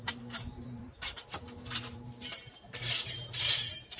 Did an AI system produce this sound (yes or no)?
yes